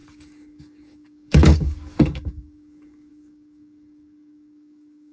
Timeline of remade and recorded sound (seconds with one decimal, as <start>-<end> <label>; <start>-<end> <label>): 0.0-5.1 remade

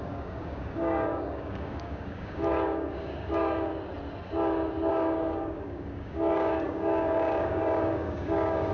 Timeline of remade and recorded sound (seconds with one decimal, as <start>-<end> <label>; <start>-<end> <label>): 0.0-3.7 remade; 3.7-4.9 recorded; 4.9-8.7 remade

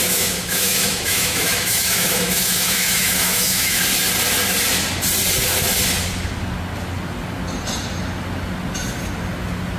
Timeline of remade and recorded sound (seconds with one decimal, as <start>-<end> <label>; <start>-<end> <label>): 0.0-3.8 remade; 3.8-9.8 recorded

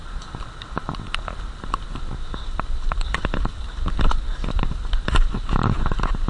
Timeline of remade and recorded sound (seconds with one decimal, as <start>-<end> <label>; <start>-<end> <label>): 0.0-6.3 recorded